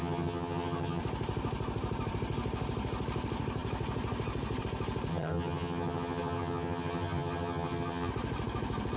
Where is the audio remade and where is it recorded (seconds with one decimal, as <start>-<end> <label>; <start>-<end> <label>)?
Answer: 0.0-1.0 remade; 1.0-5.1 recorded; 5.1-8.1 remade; 8.1-9.0 recorded